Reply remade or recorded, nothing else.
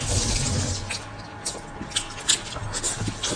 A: recorded